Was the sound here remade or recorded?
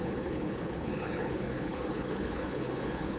remade